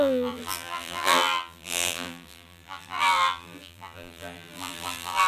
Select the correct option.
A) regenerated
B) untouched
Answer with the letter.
A